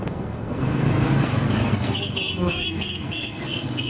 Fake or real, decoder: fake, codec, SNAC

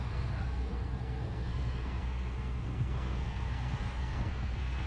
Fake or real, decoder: fake, codec, SNAC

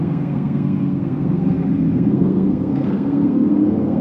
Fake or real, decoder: fake, codec, SNAC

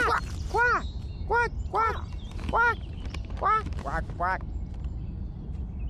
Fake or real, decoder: real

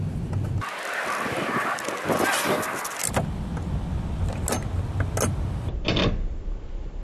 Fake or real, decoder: real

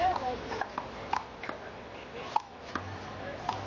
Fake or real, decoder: real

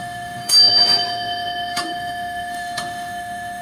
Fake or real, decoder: fake, autoencoder, DAC-VAE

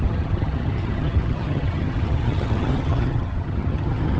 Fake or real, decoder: fake, vocoder, HiFi-GAN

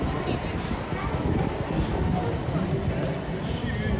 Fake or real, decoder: real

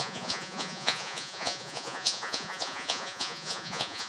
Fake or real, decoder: fake, vocoder, Vocos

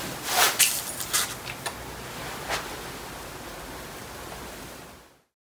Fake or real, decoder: real